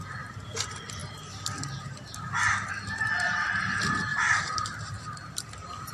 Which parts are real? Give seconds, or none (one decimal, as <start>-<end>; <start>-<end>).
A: 0.0-4.1; 5.0-5.9